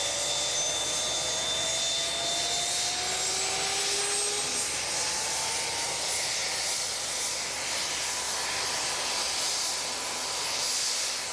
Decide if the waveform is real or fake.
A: real